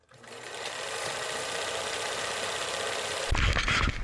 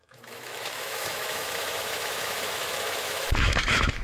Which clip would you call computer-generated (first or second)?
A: second